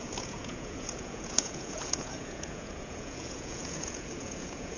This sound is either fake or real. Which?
fake